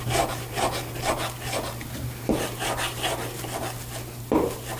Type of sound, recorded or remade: recorded